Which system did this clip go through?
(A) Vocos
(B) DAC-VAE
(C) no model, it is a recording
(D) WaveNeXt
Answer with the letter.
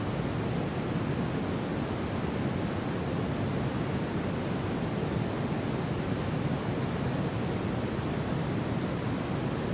C